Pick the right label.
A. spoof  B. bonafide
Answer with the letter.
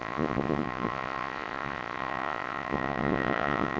A